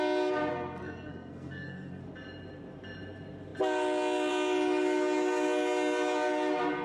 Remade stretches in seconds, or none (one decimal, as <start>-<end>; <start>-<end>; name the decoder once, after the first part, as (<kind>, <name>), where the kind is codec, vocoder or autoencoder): 0.5-2.0 (codec, SNAC)